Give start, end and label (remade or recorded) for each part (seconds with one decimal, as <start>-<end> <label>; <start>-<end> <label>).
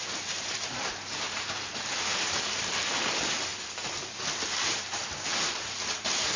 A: 0.0-3.5 remade; 3.5-4.4 recorded; 4.4-6.4 remade